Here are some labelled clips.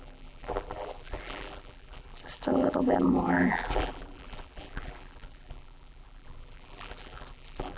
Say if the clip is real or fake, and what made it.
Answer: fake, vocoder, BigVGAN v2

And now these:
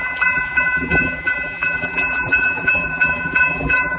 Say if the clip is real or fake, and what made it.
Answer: fake, vocoder, BigVGAN v2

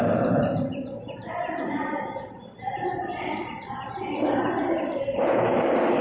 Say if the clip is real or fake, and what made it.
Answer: fake, vocoder, BigVGAN v2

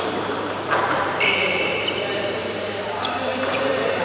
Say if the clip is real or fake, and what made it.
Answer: fake, vocoder, BigVGAN v2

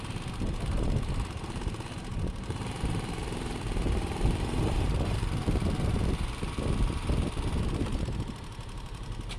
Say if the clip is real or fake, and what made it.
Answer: fake, vocoder, BigVGAN v2